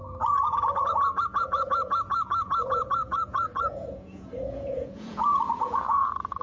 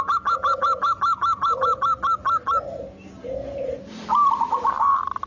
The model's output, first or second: first